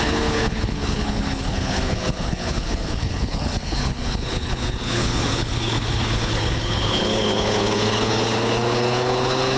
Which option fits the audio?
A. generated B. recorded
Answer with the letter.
A